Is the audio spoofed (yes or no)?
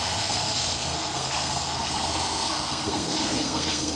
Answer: yes